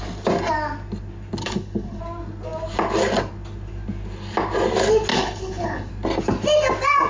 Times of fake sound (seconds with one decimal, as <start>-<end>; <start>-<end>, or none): 1.4-2.0; 5.1-5.9